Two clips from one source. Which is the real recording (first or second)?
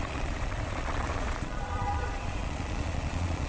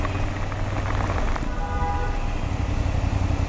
second